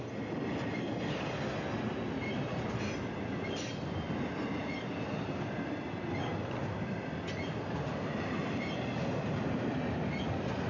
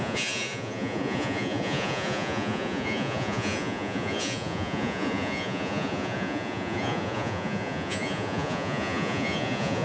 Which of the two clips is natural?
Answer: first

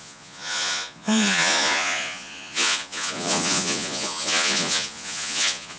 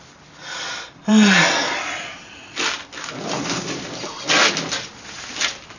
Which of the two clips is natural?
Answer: second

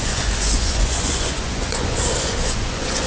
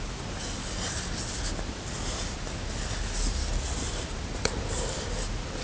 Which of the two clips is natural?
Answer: second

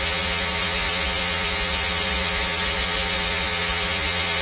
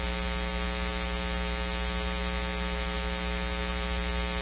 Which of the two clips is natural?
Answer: second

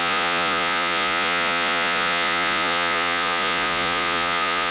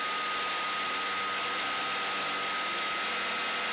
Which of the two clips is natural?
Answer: second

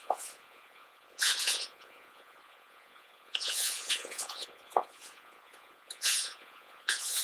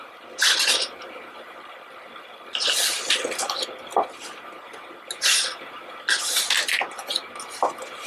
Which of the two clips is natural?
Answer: second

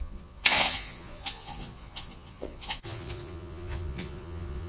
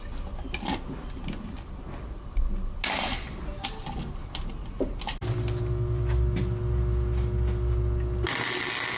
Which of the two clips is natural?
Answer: second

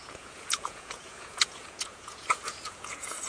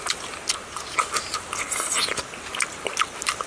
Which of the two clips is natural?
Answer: second